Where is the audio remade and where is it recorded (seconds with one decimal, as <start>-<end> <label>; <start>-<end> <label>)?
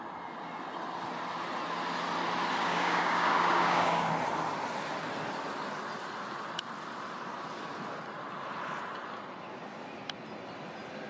0.0-2.6 recorded; 2.6-4.1 remade; 4.1-11.1 recorded